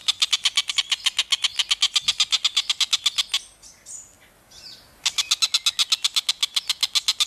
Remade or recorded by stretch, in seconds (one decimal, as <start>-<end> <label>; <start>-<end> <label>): 0.0-0.7 remade; 0.7-7.3 recorded